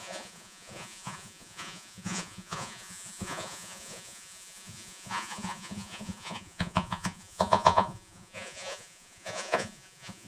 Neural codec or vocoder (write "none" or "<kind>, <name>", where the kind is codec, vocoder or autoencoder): vocoder, Vocos